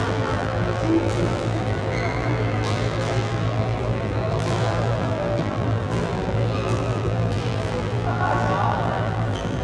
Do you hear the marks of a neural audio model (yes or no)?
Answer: yes